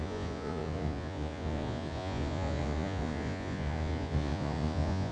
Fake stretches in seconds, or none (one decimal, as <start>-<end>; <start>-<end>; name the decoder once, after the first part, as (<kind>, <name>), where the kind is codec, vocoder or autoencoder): 0.0-5.1 (vocoder, Vocos)